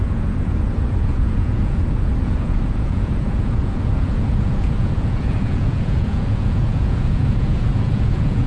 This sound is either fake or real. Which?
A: fake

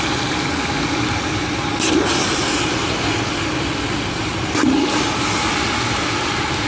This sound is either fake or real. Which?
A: real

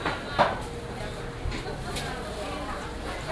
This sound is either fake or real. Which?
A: real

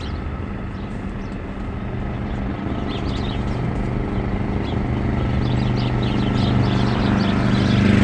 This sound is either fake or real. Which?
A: real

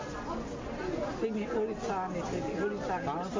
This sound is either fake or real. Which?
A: real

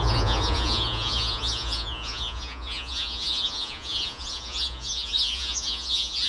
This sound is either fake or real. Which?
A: fake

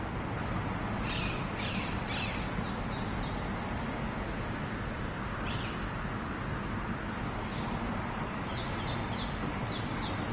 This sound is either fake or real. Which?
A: real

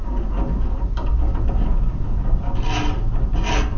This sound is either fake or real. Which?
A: real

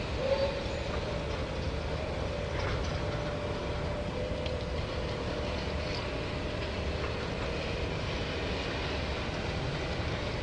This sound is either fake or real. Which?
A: real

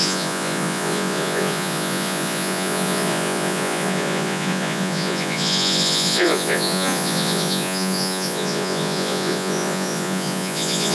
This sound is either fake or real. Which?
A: fake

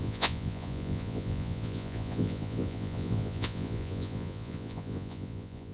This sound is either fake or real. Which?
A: fake